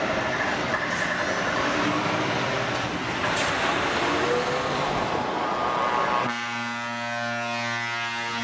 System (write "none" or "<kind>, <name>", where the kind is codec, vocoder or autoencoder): none